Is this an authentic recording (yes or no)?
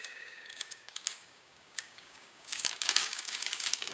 no